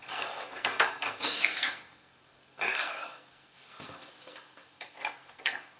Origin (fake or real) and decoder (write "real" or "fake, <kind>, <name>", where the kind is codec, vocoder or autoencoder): fake, codec, SNAC